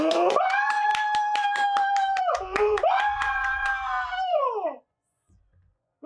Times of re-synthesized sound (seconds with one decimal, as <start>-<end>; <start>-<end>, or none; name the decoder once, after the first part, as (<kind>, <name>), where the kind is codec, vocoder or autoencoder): 0.0-0.9 (vocoder, Vocos); 2.2-3.7; 4.3-6.1